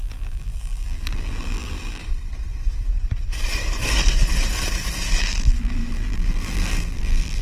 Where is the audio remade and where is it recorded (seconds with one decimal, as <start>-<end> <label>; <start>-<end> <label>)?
0.0-2.0 remade; 2.0-5.2 recorded; 5.2-7.4 remade